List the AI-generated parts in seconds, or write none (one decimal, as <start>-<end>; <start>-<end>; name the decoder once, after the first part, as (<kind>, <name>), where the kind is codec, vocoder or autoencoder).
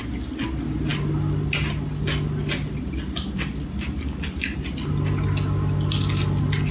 none